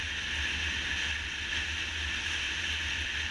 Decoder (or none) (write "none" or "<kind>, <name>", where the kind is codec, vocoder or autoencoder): none